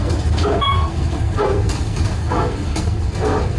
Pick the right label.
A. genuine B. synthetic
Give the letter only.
B